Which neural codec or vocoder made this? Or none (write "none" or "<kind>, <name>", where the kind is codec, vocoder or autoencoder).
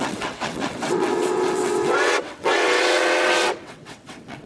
vocoder, WaveNeXt